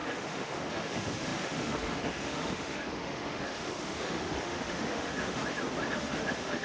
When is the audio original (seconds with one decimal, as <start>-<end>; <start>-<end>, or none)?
5.4-5.9